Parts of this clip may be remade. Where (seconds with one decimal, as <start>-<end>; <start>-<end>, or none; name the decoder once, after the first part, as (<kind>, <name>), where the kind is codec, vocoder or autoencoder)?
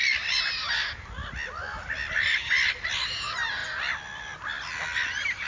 none